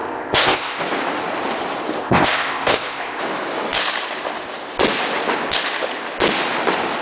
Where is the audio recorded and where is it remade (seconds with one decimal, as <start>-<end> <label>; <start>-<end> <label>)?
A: 0.0-0.8 remade; 0.8-2.0 recorded; 2.0-3.2 remade; 3.2-7.0 recorded